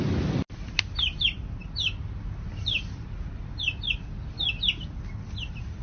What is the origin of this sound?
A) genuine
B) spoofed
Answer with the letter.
A